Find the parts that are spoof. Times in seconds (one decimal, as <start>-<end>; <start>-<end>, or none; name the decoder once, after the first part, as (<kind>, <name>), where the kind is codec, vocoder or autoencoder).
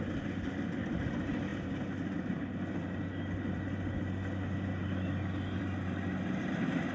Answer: none